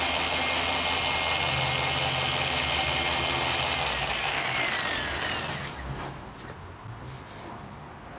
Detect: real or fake real